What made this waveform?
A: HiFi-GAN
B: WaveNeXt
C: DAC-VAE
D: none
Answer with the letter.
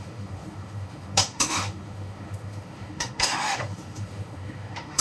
C